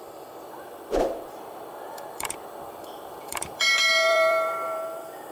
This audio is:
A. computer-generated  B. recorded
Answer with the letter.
A